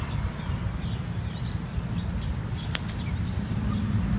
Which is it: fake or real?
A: real